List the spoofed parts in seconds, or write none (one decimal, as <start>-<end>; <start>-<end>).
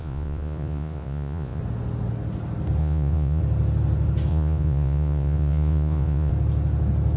0.0-1.6; 2.8-3.4; 4.3-6.3